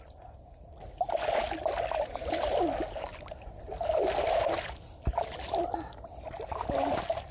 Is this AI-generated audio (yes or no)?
no